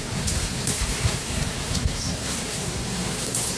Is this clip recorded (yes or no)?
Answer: no